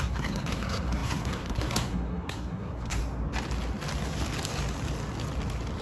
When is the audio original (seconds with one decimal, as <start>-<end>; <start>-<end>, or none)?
3.0-5.8